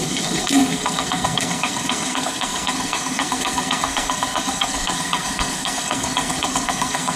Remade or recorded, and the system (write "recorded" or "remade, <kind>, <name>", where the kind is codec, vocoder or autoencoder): remade, codec, SNAC